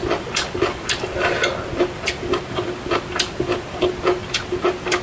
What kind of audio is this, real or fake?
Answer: real